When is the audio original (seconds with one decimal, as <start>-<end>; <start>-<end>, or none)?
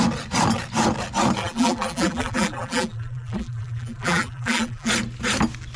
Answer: 0.0-1.4; 4.9-5.8